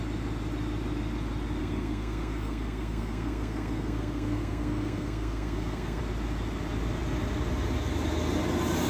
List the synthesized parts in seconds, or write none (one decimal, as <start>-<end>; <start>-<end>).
1.6-6.0